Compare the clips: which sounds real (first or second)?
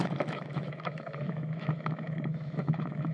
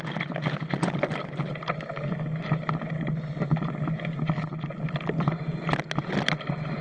second